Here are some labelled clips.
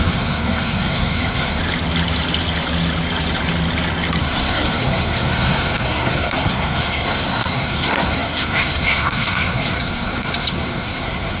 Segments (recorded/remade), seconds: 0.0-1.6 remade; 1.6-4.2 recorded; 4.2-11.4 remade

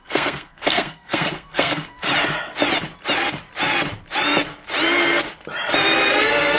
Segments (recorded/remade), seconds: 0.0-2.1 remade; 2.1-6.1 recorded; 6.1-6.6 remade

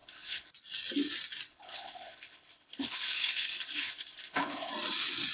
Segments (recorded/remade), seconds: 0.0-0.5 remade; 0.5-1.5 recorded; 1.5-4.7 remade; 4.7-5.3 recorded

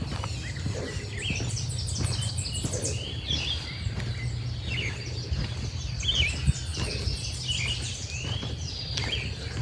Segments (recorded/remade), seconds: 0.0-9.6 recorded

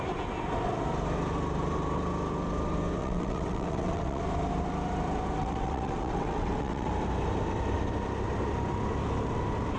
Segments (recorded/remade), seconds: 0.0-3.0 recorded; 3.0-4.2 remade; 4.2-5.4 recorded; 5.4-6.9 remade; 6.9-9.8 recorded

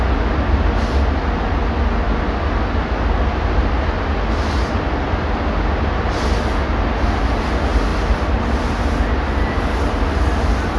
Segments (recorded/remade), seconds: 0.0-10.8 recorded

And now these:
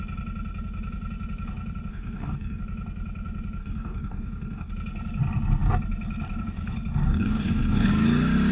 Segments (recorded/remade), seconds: 0.0-1.9 recorded; 1.9-2.6 remade; 2.6-3.6 recorded; 3.6-4.7 remade; 4.7-7.1 recorded; 7.1-7.9 remade; 7.9-8.5 recorded